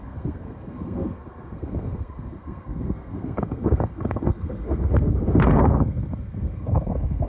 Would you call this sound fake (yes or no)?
yes